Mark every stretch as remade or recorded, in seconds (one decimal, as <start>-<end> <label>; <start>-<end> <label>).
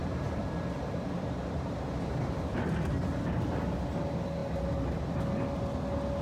0.0-3.1 remade; 3.1-6.2 recorded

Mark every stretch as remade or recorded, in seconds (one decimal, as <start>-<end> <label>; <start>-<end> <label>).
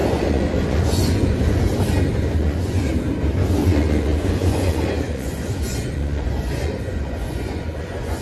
0.0-1.6 remade; 1.6-2.4 recorded; 2.4-2.9 remade; 2.9-3.6 recorded; 3.6-8.2 remade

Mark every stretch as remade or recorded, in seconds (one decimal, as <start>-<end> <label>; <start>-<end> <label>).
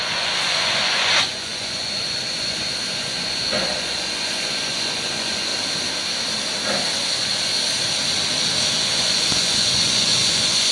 0.0-5.5 remade; 5.5-7.0 recorded; 7.0-7.5 remade; 7.5-8.7 recorded; 8.7-10.7 remade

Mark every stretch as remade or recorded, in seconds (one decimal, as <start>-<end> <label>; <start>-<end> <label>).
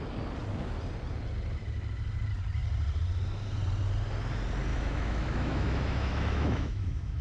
0.0-4.7 recorded; 4.7-7.2 remade